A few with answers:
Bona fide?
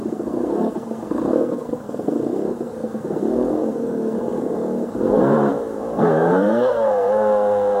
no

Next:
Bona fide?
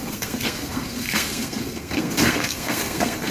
no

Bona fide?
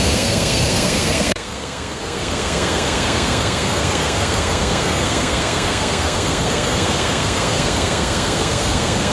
no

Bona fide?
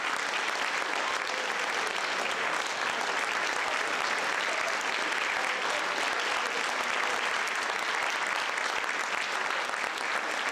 yes